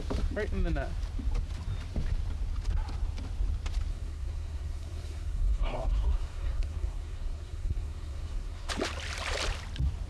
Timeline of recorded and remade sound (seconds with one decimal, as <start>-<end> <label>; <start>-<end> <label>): 0.0-3.9 recorded; 3.9-8.7 remade; 8.7-10.1 recorded